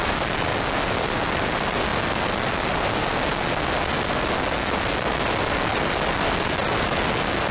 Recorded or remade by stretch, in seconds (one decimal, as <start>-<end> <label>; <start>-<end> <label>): 0.0-7.5 recorded